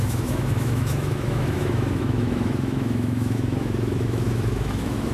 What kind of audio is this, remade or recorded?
remade